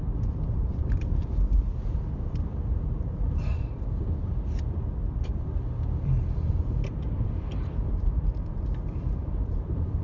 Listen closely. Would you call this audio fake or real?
fake